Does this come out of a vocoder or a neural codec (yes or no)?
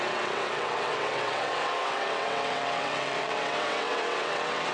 yes